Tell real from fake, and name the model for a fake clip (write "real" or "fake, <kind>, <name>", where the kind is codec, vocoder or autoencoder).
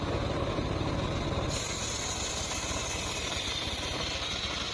real